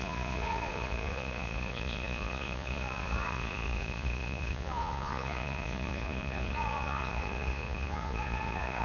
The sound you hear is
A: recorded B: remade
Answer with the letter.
B